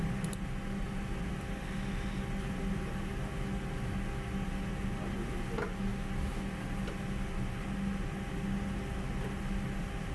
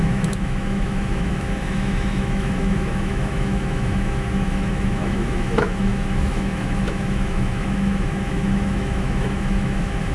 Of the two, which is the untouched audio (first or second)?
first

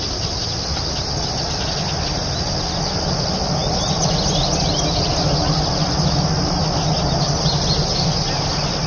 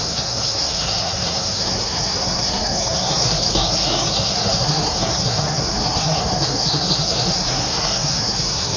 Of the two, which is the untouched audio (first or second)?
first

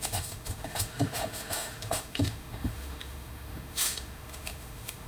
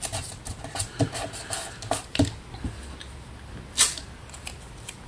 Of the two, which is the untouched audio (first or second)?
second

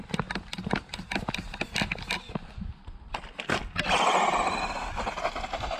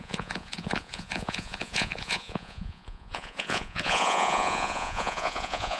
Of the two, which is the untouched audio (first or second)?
first